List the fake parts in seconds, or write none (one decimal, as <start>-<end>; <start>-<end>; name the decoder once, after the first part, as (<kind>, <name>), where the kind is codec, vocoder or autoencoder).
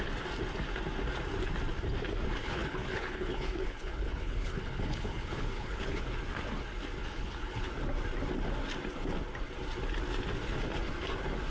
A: 2.4-6.0 (codec, HILCodec); 7.0-7.7